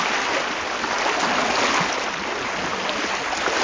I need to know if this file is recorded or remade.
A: recorded